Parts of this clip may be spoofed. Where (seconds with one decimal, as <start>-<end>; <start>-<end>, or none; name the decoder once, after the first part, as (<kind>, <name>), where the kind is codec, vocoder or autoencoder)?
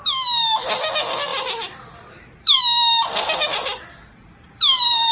1.3-2.6 (vocoder, BigVGAN v2); 3.6-5.1